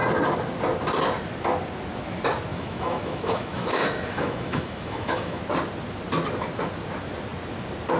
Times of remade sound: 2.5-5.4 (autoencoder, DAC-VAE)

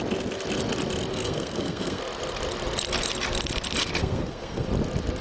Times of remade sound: 1.1-2.0 (codec, SNAC); 4.0-4.7

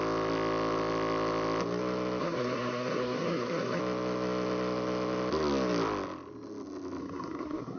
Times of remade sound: 2.2-3.8 (codec, SNAC); 7.0-7.8

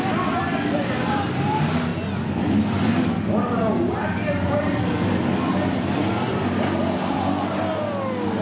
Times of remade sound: none

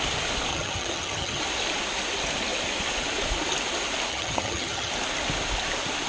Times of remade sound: 0.5-1.4 (vocoder, HiFi-GAN); 4.1-4.9

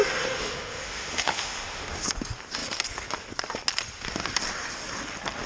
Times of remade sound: 0.4-2.1 (autoencoder, DAC-VAE)

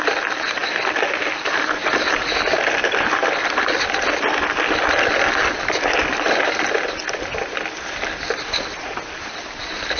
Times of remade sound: none